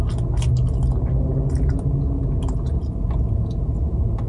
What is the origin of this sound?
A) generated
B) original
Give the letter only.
B